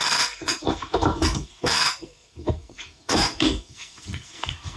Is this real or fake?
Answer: fake